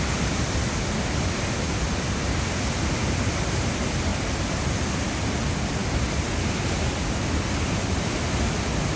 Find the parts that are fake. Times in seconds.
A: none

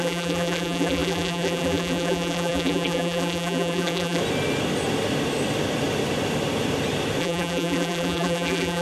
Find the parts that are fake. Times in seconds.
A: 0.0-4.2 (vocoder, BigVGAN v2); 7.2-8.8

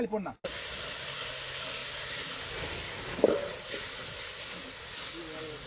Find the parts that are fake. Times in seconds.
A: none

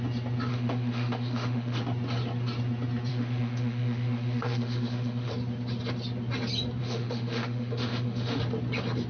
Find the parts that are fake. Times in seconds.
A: 0.5-1.8 (autoencoder, DAC-VAE); 3.1-5.3; 6.8-8.4